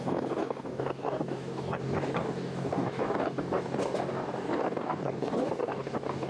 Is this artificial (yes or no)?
yes